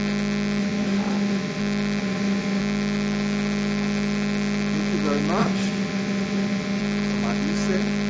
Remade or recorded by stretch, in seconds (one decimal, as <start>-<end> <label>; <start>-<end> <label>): 0.0-0.6 recorded; 0.6-1.6 remade; 1.6-2.0 recorded; 2.0-2.6 remade; 2.6-5.4 recorded; 5.4-6.8 remade; 6.8-8.1 recorded